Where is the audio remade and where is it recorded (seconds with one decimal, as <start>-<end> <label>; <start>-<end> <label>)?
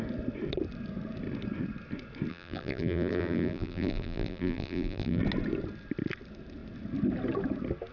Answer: 0.0-2.3 recorded; 2.3-5.2 remade; 5.2-7.9 recorded